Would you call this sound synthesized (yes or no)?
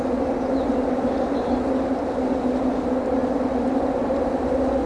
no